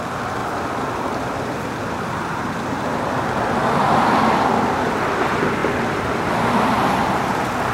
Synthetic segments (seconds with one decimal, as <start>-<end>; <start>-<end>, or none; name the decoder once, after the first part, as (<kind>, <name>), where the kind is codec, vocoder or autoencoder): 0.4-5.0 (vocoder, BigVGAN v2); 5.6-6.3